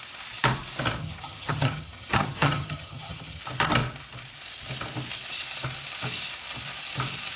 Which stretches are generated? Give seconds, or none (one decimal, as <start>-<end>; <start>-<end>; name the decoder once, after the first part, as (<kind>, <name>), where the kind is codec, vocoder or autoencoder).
1.0-3.4 (vocoder, HiFi-GAN)